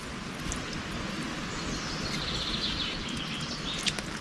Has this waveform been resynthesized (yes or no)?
no